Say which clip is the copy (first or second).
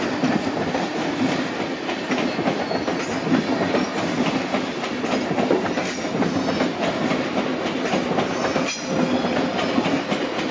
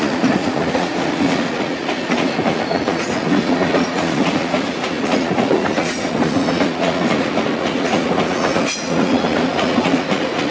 second